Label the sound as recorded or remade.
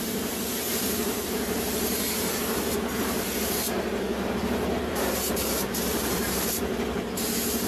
remade